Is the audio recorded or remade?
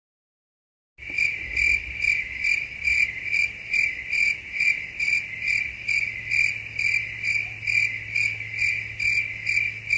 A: recorded